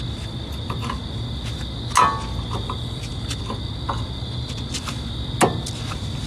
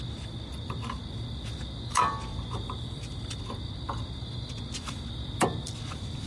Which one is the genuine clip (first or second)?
first